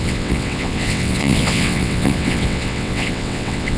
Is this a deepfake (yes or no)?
yes